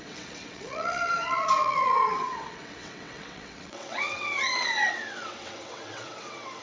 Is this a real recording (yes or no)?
no